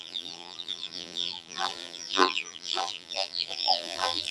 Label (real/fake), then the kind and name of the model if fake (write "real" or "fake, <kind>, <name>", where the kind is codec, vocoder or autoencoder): fake, vocoder, BigVGAN v2